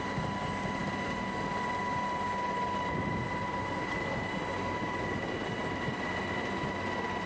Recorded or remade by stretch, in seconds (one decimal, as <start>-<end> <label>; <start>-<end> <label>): 0.0-7.3 recorded